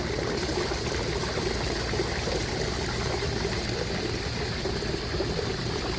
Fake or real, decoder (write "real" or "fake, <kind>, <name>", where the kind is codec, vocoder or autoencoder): real